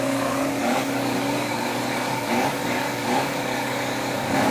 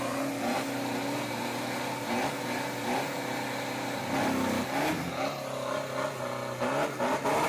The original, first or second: second